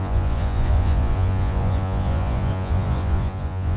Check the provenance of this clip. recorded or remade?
remade